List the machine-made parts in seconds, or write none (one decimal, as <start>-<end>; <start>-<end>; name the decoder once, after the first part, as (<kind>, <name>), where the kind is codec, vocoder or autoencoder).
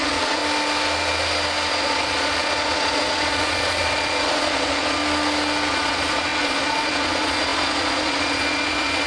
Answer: 0.0-0.4 (vocoder, Vocos); 1.7-5.0; 5.7-9.1